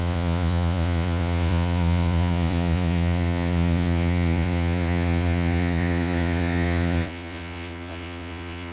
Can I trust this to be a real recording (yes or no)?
no